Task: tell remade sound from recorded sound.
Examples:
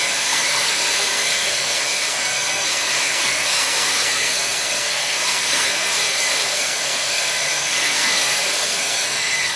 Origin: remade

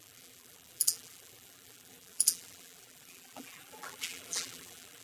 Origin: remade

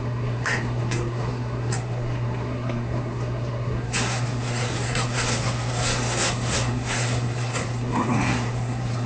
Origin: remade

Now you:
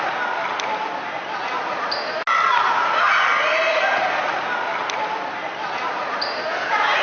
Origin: recorded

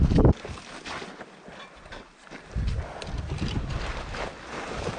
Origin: recorded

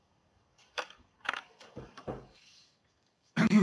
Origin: remade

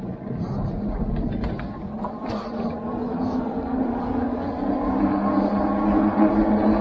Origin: recorded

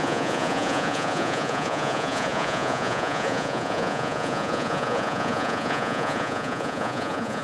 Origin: remade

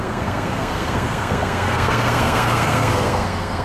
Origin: remade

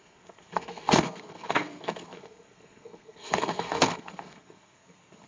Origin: remade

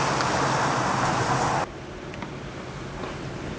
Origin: recorded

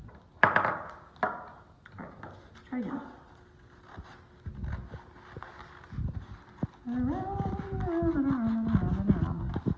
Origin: recorded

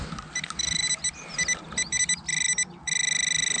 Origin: recorded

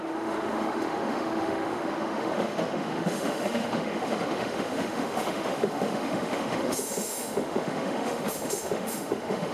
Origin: remade